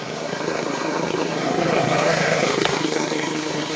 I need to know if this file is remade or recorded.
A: remade